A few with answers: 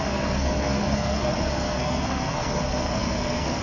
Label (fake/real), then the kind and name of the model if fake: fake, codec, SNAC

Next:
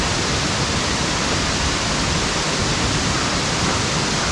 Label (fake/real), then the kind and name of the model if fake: real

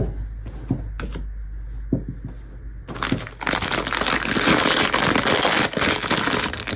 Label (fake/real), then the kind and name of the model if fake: real